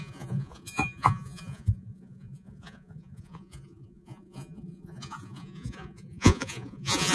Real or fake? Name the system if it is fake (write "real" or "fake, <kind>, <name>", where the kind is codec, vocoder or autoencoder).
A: fake, vocoder, Vocos